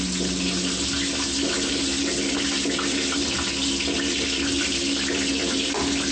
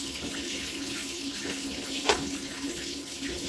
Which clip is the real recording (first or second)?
first